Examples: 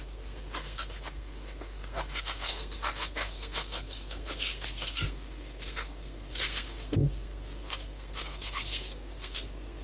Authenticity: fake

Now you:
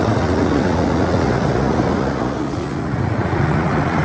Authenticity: fake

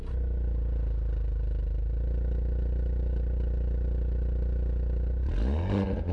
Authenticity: real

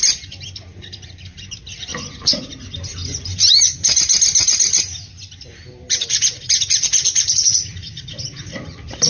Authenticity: real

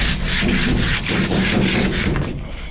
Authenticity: real